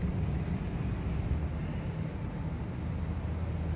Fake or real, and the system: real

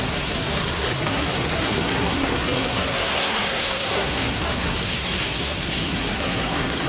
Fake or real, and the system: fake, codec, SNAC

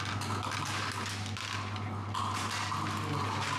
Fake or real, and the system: real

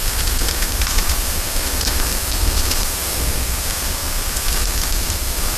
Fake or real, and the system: fake, codec, SNAC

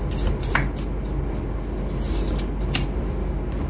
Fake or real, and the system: real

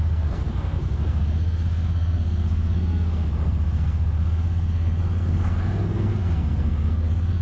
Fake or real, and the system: fake, codec, SNAC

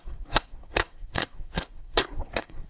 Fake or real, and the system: fake, codec, SNAC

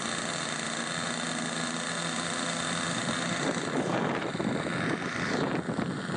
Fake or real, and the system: real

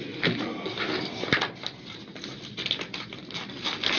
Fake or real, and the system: real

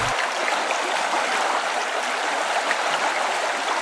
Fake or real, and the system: real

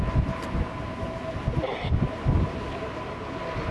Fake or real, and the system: real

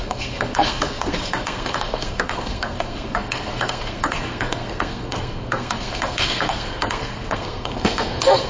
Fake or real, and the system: fake, codec, SNAC